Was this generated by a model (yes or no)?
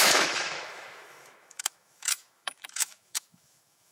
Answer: yes